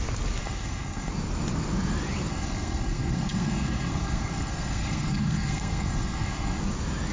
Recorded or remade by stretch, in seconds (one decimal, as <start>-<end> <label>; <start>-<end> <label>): 0.0-0.4 recorded; 0.4-1.1 remade; 1.1-2.3 recorded; 2.3-6.6 remade; 6.6-7.1 recorded